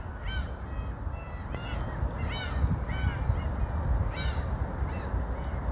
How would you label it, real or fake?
real